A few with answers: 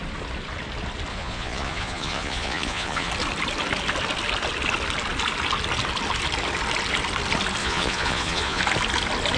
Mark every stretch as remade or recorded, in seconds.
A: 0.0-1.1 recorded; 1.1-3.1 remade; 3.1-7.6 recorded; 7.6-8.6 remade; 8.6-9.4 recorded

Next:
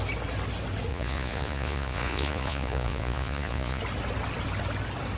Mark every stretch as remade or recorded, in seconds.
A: 0.0-0.9 recorded; 0.9-3.8 remade; 3.8-5.2 recorded

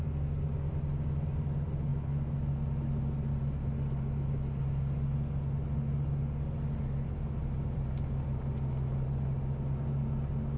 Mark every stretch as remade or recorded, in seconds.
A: 0.0-10.6 recorded

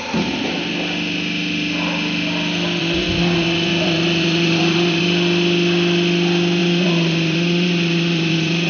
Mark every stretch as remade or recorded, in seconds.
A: 0.0-2.8 recorded; 2.8-5.0 remade; 5.0-6.6 recorded; 6.6-8.7 remade

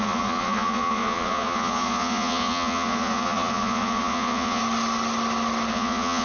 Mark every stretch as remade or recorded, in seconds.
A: 0.0-4.6 remade; 4.6-5.7 recorded; 5.7-6.2 remade

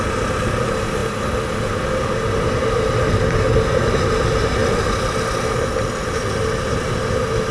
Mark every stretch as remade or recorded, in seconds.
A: 0.0-7.5 recorded